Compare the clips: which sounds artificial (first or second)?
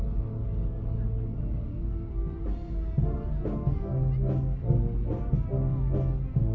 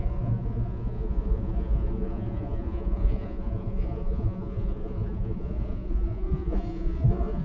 second